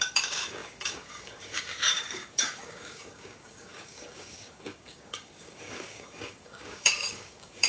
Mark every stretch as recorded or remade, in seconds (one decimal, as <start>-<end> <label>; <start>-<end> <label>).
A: 0.0-7.7 remade